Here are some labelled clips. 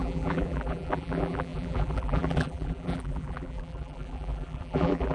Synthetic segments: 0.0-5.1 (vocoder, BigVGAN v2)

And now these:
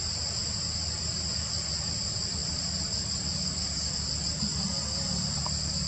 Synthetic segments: 2.4-5.9 (vocoder, BigVGAN v2)

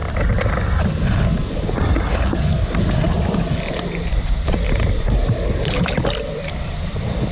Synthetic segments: 0.0-0.8 (vocoder, BigVGAN v2)